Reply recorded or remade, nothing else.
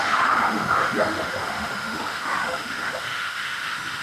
remade